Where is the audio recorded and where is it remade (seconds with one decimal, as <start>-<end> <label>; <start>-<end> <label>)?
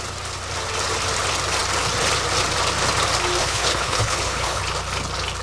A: 0.0-3.4 recorded; 3.4-4.6 remade; 4.6-5.4 recorded